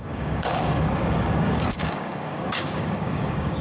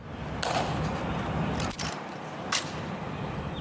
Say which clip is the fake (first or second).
first